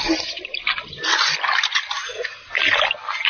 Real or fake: real